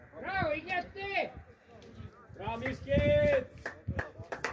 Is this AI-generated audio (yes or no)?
no